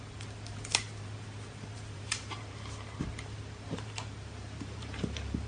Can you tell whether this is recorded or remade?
remade